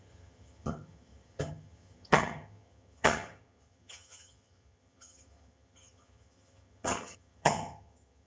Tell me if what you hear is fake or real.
fake